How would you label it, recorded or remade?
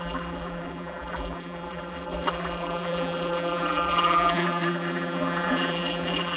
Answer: remade